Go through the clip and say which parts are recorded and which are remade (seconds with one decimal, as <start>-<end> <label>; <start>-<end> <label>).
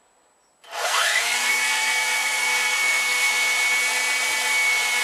0.0-0.7 recorded; 0.7-3.3 remade; 3.3-5.0 recorded